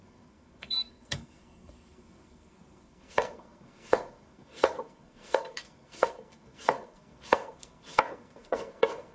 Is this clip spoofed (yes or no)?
yes